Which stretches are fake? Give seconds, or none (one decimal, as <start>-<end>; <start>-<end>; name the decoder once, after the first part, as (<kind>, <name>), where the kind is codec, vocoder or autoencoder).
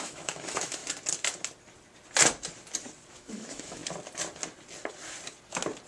0.0-0.8 (autoencoder, DAC-VAE); 3.1-3.8